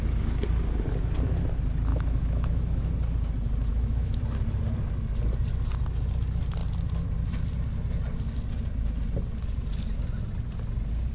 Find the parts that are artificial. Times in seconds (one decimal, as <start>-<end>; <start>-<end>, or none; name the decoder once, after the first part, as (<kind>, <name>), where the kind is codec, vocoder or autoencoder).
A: 1.9-2.9 (autoencoder, DAC-VAE); 3.7-4.2